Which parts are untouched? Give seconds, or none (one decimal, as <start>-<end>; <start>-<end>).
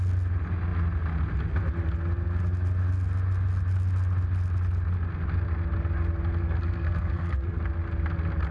0.0-6.4; 7.6-8.5